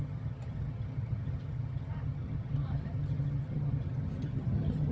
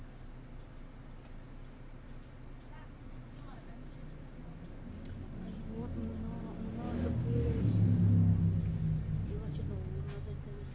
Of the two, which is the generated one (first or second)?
first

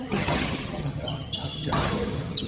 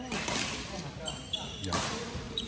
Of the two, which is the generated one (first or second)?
first